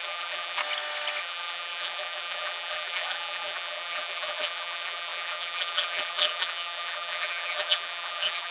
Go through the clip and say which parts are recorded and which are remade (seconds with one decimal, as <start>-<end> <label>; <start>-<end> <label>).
0.0-0.6 remade; 0.6-1.2 recorded; 1.2-8.5 remade